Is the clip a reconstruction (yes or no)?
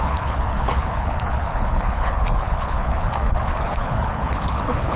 yes